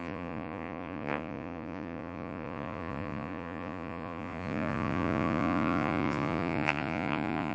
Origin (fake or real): fake